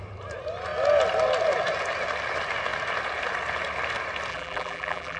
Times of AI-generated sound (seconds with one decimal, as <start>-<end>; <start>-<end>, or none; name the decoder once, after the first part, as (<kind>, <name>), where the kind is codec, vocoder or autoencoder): 4.3-5.2 (vocoder, BigVGAN v2)